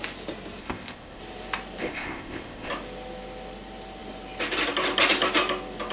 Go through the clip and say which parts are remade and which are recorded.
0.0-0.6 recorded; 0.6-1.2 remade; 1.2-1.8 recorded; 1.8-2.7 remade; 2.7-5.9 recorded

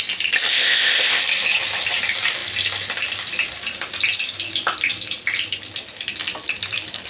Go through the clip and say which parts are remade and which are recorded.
0.0-0.5 recorded; 0.5-1.2 remade; 1.2-7.1 recorded

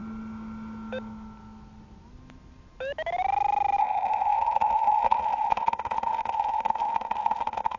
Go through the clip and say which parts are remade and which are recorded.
0.0-3.8 recorded; 3.8-7.8 remade

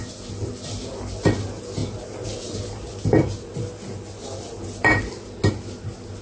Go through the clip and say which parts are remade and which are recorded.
0.0-6.2 recorded

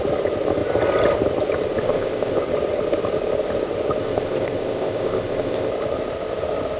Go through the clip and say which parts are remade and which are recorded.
0.0-1.8 recorded; 1.8-2.4 remade; 2.4-4.0 recorded; 4.0-5.7 remade; 5.7-6.8 recorded

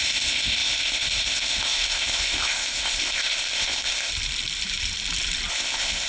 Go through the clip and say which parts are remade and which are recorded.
0.0-4.1 remade; 4.1-5.5 recorded; 5.5-6.1 remade

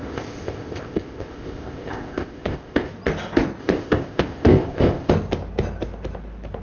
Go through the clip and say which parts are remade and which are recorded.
0.0-2.9 remade; 2.9-3.6 recorded; 3.6-5.1 remade; 5.1-6.6 recorded

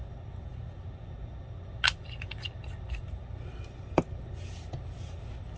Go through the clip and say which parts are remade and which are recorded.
0.0-5.6 recorded